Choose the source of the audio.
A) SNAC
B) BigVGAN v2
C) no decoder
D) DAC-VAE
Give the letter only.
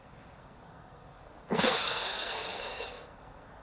A